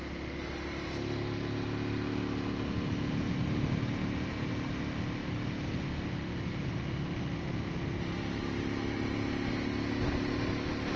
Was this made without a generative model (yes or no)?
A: yes